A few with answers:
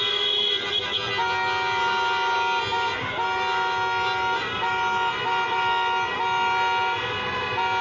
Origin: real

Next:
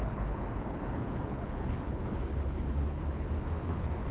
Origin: fake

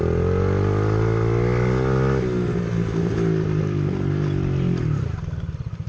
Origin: real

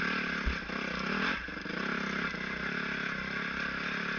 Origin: real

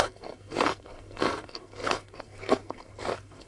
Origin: fake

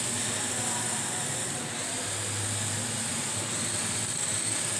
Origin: real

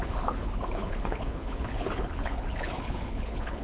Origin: fake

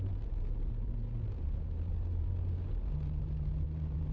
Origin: real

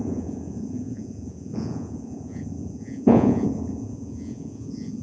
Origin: fake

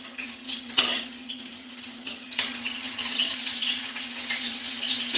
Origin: fake